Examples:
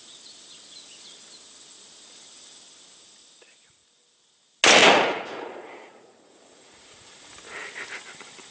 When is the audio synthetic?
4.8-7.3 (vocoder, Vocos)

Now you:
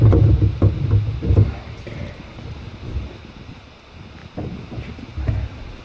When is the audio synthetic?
1.6-2.2 (vocoder, BigVGAN v2)

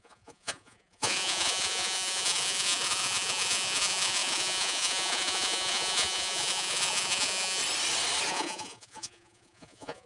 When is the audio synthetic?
0.0-7.6 (vocoder, Vocos); 8.3-10.1